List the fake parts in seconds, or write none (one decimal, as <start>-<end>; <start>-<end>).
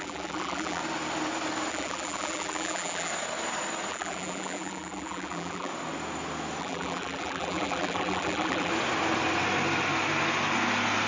0.0-0.8; 1.7-3.1; 3.9-5.7; 6.6-8.7